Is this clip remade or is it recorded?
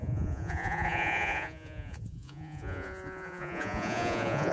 remade